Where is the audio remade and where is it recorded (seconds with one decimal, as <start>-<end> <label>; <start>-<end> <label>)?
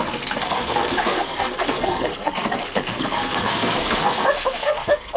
0.0-5.2 remade